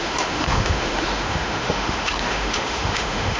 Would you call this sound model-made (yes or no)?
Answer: yes